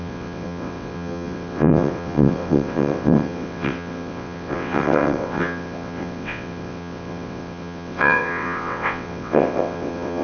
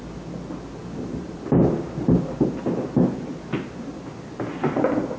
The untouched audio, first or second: second